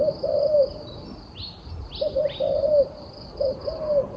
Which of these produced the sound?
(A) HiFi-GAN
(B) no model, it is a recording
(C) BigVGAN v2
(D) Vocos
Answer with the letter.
B